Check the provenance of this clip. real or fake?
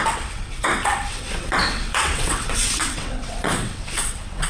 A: fake